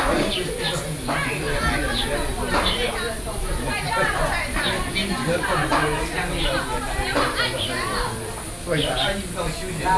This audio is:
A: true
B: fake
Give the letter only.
A